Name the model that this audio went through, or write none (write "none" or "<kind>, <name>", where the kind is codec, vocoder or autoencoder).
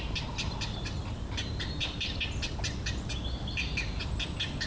none